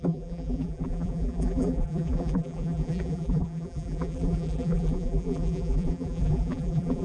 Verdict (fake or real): fake